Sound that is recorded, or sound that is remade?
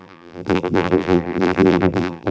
remade